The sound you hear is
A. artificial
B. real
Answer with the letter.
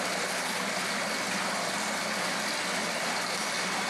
B